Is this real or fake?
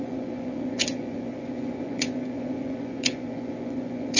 fake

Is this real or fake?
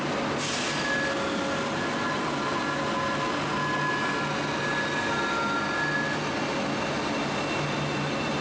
real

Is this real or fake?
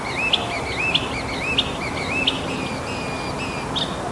real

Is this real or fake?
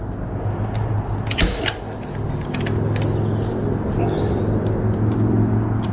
real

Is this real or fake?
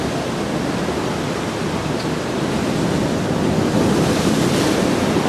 real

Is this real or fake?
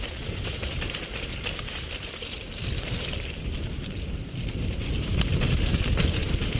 real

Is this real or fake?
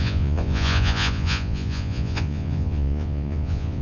fake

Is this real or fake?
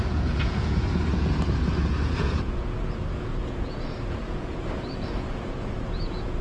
fake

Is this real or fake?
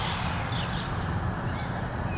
real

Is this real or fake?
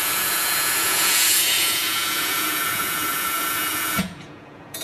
fake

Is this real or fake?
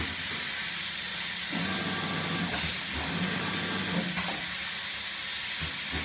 real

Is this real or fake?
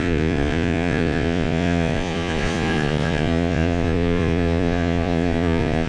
fake